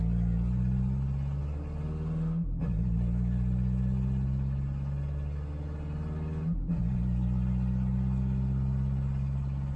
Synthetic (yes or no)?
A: no